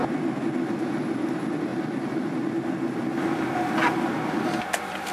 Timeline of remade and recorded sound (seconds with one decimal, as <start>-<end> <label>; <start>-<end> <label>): 0.0-5.1 recorded